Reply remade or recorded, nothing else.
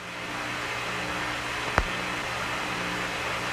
recorded